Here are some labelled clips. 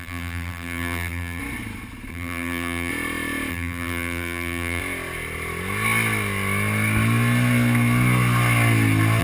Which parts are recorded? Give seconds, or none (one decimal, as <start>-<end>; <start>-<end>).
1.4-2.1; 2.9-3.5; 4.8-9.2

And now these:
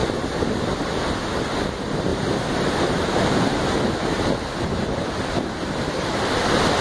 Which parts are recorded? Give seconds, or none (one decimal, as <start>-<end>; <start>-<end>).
0.0-2.1; 6.2-6.8

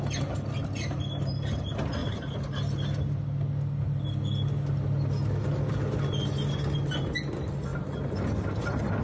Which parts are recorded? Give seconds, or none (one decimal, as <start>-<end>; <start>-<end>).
0.0-9.0